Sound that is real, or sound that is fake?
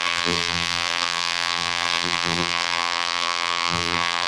fake